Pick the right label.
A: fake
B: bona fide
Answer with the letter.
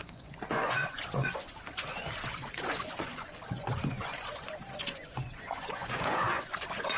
A